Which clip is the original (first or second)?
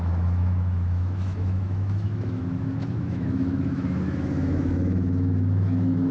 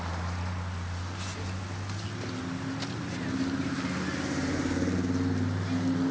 second